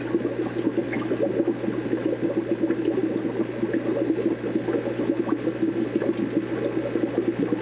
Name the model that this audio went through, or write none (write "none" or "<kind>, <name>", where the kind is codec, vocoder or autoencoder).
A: none